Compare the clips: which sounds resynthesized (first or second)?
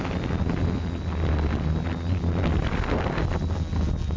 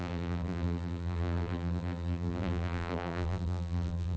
second